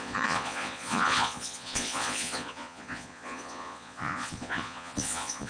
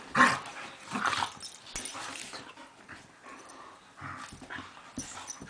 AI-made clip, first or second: first